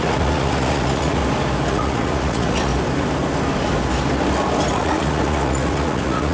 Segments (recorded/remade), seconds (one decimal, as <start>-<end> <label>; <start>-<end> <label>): 0.0-1.2 remade; 1.2-1.7 recorded; 1.7-2.7 remade; 2.7-4.7 recorded; 4.7-6.3 remade